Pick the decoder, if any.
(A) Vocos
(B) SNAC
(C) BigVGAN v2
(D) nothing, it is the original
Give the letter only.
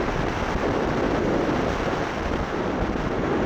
D